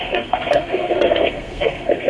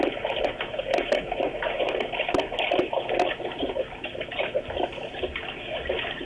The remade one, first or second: first